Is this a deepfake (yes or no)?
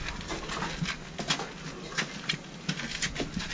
no